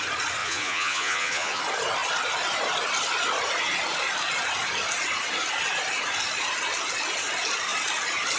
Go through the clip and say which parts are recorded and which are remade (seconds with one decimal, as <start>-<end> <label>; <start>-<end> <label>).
0.0-0.4 recorded; 0.4-1.6 remade; 1.6-8.4 recorded